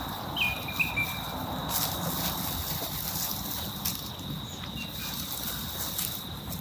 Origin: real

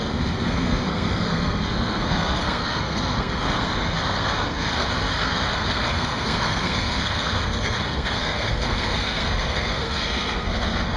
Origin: fake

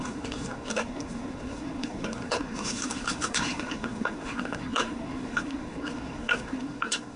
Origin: fake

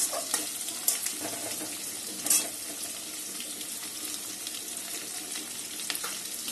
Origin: real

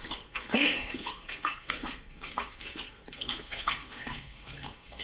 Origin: fake